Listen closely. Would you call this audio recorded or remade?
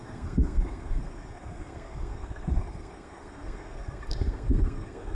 remade